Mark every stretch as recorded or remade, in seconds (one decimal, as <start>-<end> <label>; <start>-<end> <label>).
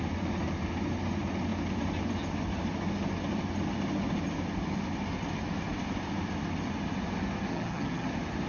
0.0-7.5 recorded; 7.5-8.1 remade; 8.1-8.5 recorded